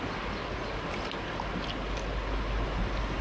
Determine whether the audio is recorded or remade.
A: recorded